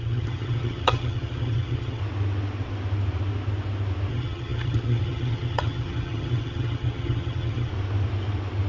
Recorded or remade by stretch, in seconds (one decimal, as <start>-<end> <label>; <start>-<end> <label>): 0.0-2.0 remade; 2.0-4.1 recorded; 4.1-7.7 remade; 7.7-8.7 recorded